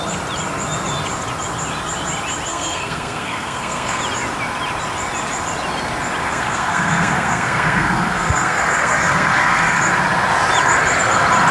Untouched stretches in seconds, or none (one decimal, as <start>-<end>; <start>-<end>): 0.0-2.5; 4.0-6.2; 9.8-11.5